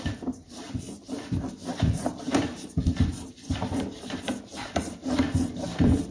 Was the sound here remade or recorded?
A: remade